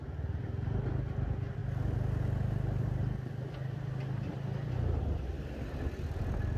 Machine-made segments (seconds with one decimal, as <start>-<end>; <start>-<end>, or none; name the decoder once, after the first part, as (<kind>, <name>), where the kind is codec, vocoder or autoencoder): none